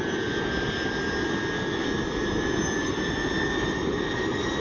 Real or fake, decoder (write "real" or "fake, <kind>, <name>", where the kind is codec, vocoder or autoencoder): real